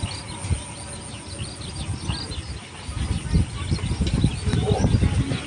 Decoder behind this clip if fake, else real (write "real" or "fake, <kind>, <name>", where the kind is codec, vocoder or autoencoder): real